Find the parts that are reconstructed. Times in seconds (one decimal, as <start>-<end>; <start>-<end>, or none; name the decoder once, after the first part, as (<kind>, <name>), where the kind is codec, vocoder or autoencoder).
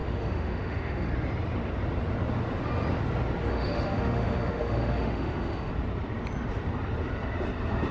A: 0.0-1.1 (autoencoder, DAC-VAE); 3.5-5.7